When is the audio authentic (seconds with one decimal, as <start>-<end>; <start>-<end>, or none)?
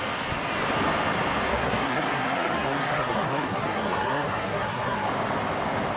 0.0-1.5; 5.1-6.0